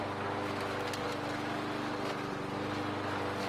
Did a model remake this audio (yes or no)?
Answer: no